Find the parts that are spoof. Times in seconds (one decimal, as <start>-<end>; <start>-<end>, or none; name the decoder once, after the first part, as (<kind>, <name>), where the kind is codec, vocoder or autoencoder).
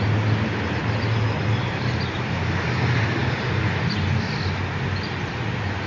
none